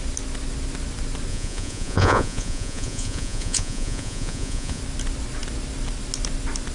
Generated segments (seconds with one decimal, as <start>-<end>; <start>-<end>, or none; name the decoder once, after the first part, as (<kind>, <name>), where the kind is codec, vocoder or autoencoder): 1.3-4.8 (vocoder, Vocos)